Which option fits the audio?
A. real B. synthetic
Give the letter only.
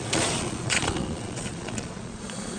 B